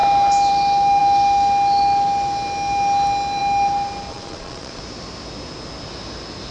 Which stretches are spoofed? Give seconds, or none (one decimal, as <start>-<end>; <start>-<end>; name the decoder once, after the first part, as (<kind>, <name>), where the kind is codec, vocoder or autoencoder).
4.1-4.8 (vocoder, Vocos)